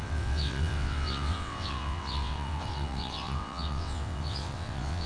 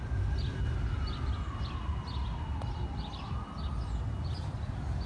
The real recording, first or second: second